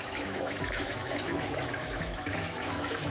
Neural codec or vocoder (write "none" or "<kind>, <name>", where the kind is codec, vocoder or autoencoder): autoencoder, DAC-VAE